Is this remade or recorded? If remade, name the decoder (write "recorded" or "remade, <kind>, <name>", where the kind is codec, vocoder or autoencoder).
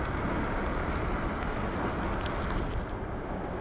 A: recorded